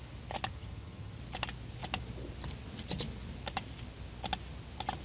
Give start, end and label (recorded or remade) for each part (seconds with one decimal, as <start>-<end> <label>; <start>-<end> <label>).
0.0-0.5 recorded; 0.5-1.2 remade; 1.2-5.0 recorded